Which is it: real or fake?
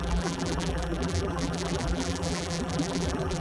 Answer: fake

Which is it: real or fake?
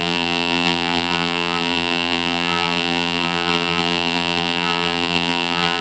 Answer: fake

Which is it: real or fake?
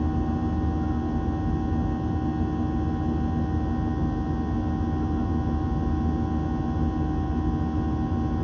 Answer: real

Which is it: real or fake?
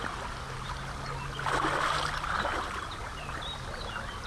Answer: real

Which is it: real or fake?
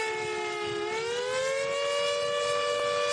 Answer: real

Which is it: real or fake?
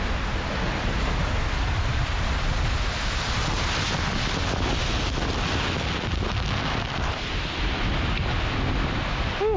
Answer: real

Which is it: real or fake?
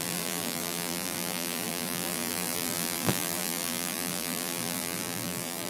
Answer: fake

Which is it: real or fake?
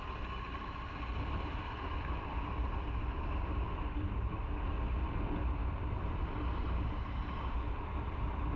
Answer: real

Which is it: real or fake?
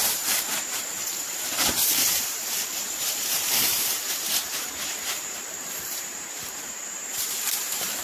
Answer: fake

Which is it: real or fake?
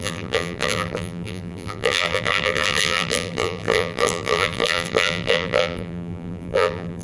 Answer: fake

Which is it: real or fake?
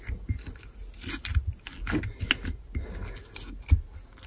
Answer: real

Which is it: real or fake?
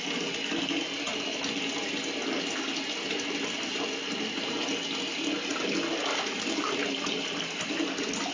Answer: real